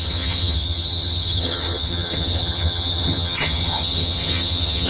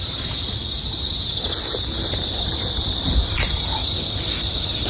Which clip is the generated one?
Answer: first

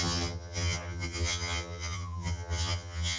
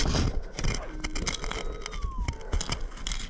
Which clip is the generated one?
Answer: first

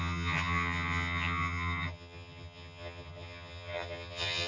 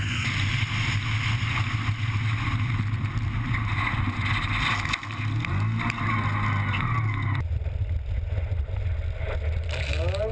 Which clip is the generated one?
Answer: first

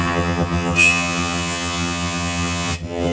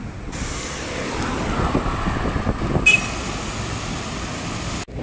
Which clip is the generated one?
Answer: first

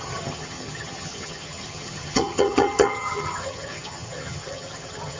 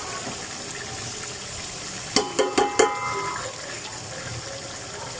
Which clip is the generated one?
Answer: first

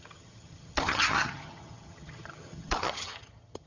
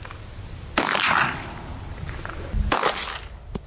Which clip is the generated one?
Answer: first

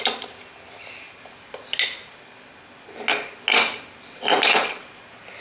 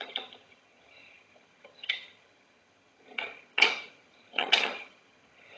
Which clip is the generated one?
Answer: second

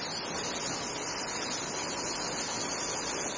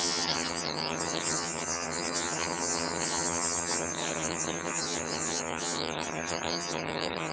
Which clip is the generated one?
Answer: second